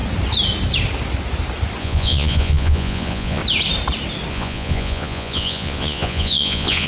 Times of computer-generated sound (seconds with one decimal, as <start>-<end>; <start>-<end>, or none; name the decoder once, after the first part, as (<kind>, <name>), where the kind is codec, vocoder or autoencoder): 1.8-3.4 (vocoder, Vocos); 4.3-6.9